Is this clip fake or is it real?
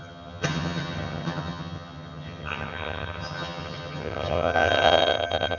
fake